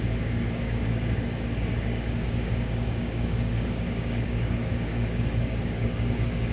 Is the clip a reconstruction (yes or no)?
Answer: yes